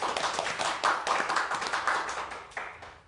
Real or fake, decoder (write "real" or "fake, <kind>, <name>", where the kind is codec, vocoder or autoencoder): real